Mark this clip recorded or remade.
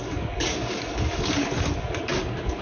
remade